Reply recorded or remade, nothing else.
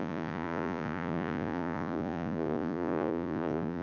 remade